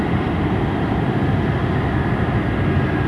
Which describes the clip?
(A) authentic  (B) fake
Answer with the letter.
A